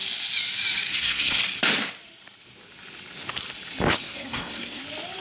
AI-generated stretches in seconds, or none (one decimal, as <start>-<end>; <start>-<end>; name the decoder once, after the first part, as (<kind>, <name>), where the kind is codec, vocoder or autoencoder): 0.9-1.4 (codec, SNAC); 4.0-4.8